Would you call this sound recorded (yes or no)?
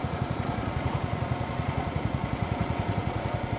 no